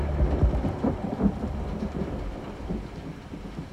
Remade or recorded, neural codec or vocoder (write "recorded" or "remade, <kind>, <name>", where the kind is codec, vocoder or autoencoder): remade, vocoder, BigVGAN v2